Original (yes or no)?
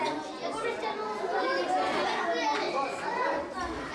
yes